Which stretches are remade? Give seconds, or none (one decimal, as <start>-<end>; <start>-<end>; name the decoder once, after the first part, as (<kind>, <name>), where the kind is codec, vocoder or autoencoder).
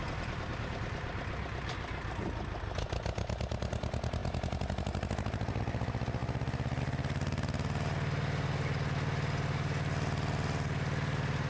none